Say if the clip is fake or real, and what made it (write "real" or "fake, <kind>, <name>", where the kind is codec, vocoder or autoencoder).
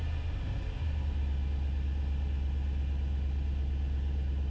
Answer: real